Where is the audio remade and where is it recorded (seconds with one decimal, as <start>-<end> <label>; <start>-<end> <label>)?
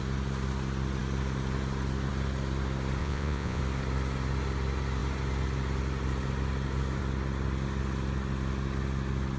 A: 0.0-3.0 recorded; 3.0-3.6 remade; 3.6-9.4 recorded